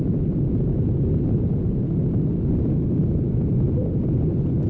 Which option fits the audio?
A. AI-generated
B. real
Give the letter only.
B